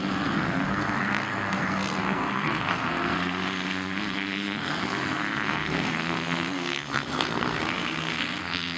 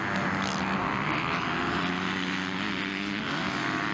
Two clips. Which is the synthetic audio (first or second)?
first